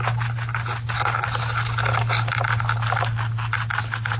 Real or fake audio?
real